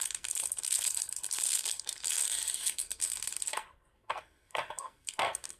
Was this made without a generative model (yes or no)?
no